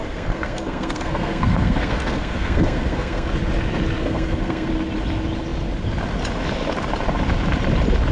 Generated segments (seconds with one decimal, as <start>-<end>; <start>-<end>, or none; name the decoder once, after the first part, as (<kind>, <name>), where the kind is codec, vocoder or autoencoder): 0.0-3.3 (codec, SNAC); 4.0-4.7